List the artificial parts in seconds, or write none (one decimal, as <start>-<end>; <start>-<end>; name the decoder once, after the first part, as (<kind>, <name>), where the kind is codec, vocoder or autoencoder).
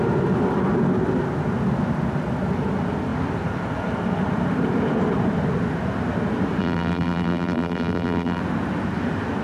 6.6-8.4 (vocoder, BigVGAN v2)